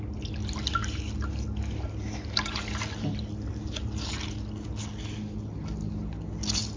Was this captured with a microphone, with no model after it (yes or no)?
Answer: yes